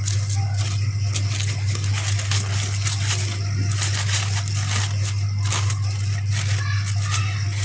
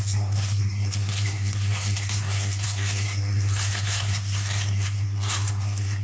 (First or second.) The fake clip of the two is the second